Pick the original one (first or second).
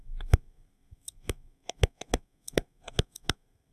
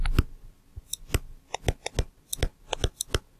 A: second